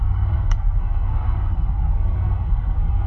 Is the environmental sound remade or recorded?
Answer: remade